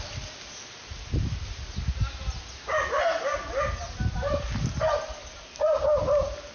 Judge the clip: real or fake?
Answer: real